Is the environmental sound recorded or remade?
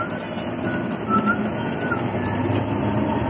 recorded